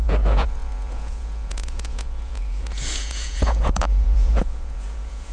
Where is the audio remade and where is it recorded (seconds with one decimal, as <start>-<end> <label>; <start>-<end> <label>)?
0.0-5.3 remade